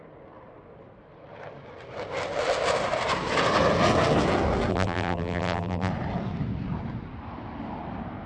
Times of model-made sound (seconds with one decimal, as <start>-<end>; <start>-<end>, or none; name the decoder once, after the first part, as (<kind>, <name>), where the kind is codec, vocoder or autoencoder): 4.7-5.9 (vocoder, BigVGAN v2)